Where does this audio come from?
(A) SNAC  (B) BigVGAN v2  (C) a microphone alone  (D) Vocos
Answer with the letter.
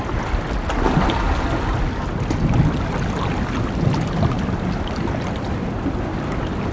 C